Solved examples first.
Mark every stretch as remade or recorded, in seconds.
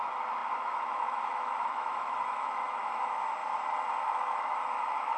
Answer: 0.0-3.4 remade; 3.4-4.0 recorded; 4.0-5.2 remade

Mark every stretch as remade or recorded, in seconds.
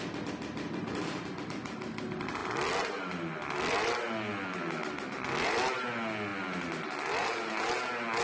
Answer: 0.0-8.2 recorded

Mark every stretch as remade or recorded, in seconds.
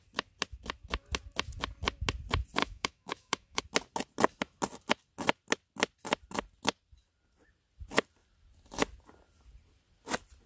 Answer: 0.0-2.6 recorded; 2.6-3.6 remade; 3.6-10.5 recorded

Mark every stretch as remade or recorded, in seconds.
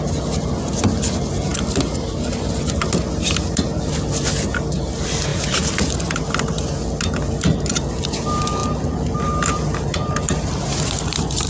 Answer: 0.0-1.5 recorded; 1.5-4.0 remade; 4.0-5.3 recorded; 5.3-6.2 remade; 6.2-8.6 recorded; 8.6-11.5 remade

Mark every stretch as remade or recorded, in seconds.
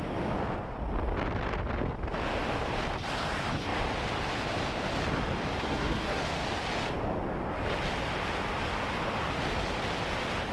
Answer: 0.0-5.6 recorded; 5.6-6.2 remade; 6.2-10.5 recorded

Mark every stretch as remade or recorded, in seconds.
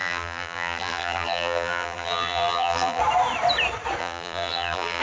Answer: 0.0-3.0 remade; 3.0-4.0 recorded; 4.0-5.0 remade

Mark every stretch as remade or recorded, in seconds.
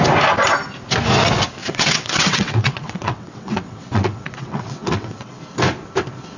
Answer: 0.0-1.6 recorded; 1.6-5.4 remade; 5.4-6.4 recorded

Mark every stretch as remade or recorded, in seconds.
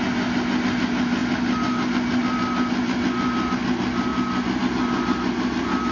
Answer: 0.0-5.9 recorded